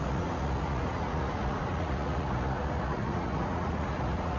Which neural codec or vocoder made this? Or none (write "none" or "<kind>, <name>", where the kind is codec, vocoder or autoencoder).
vocoder, Vocos